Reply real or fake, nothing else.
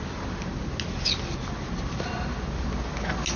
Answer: real